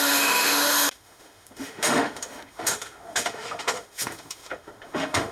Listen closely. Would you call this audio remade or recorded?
remade